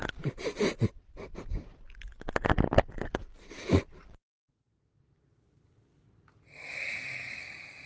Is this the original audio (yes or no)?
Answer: yes